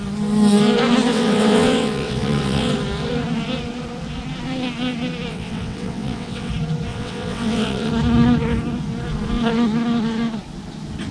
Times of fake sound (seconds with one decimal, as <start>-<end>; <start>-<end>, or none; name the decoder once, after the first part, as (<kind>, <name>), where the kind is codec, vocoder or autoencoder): 1.1-2.7 (vocoder, WaveNeXt); 5.3-6.5; 6.9-7.9